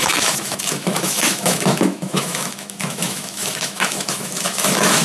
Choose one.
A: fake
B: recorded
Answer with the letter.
A